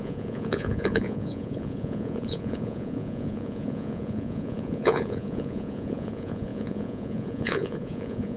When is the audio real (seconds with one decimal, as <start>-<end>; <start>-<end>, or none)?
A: none

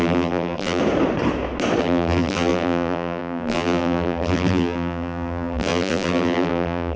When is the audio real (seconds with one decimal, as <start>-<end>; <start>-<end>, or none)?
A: 0.8-1.8

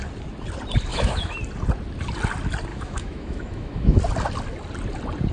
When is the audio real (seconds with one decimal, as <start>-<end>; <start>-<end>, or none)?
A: 0.0-0.9; 1.4-2.7; 4.0-5.3

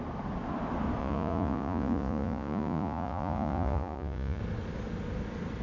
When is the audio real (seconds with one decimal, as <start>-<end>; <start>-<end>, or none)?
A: 0.0-1.0; 4.4-5.6

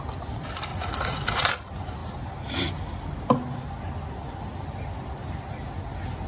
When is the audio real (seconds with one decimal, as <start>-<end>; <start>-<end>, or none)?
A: 0.0-0.7; 1.5-6.3

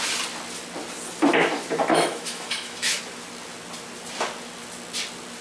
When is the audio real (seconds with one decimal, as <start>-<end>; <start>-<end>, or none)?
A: 0.0-1.9; 3.0-5.4

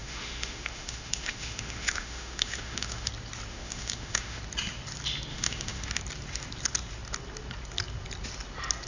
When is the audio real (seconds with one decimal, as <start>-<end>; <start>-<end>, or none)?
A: 3.1-3.5; 4.4-5.3; 6.0-8.9

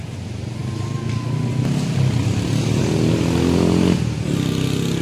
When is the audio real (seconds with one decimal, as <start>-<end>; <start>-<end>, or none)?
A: 0.0-5.0